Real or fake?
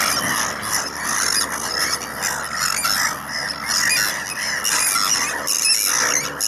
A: real